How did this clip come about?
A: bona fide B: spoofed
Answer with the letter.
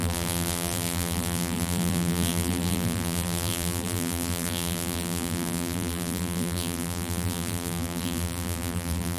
B